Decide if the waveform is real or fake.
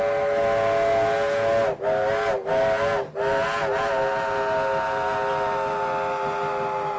real